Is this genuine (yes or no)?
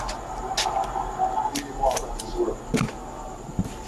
yes